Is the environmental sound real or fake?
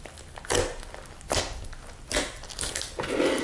real